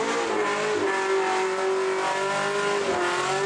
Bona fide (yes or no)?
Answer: yes